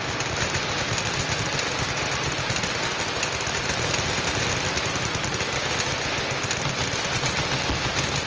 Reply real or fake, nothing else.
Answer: real